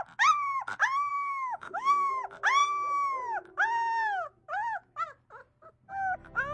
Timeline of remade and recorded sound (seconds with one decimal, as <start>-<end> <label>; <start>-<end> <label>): 0.0-1.1 recorded; 1.1-2.1 remade; 2.1-6.5 recorded